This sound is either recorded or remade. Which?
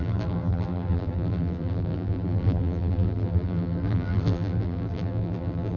remade